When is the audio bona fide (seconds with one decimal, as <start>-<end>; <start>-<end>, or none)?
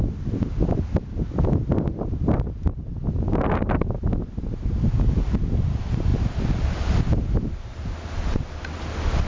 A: 0.0-9.3